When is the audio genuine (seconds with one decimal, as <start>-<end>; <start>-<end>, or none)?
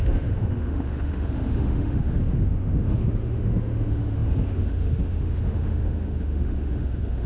none